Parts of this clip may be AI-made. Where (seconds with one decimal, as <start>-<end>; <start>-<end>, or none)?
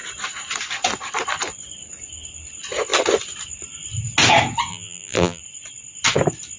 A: 4.7-5.4